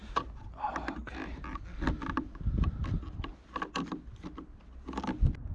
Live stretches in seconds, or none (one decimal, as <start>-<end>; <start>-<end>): 0.0-5.5